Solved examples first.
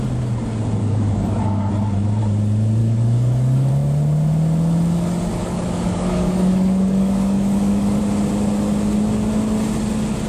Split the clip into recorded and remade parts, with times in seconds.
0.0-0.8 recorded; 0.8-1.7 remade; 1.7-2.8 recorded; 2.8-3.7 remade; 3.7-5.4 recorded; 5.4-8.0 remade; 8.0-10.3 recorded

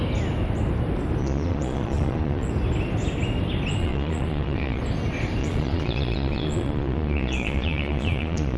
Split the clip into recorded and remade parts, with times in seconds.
0.0-1.2 recorded; 1.2-2.5 remade; 2.5-3.8 recorded; 3.8-4.8 remade; 4.8-5.4 recorded; 5.4-8.6 remade

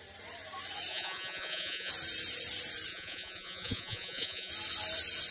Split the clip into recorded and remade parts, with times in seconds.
0.0-0.9 recorded; 0.9-1.9 remade; 1.9-2.9 recorded; 2.9-4.5 remade; 4.5-5.3 recorded

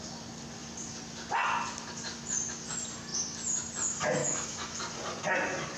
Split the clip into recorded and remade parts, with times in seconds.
0.0-4.2 recorded; 4.2-4.8 remade; 4.8-5.8 recorded

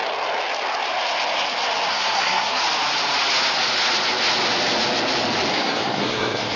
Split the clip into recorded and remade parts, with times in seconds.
0.0-1.9 recorded; 1.9-2.6 remade; 2.6-5.5 recorded; 5.5-6.6 remade

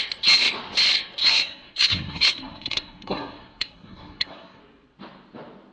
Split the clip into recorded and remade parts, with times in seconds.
0.0-1.2 recorded; 1.2-4.6 remade; 4.6-5.7 recorded